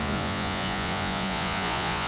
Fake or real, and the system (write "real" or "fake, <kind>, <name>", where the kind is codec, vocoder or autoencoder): fake, vocoder, Vocos